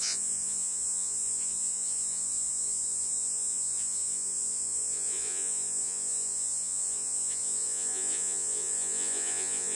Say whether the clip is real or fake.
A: fake